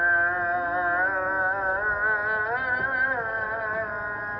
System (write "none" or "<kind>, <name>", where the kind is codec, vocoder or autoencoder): none